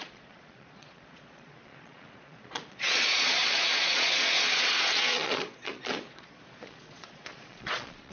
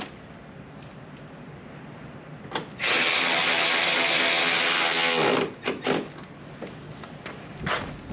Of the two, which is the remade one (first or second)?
first